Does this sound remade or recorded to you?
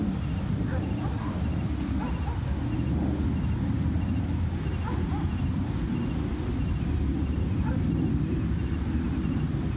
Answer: recorded